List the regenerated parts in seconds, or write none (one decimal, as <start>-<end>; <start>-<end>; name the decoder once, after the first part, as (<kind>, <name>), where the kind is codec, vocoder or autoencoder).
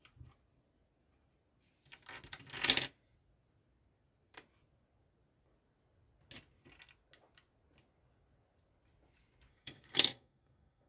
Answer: 9.5-10.9 (codec, SNAC)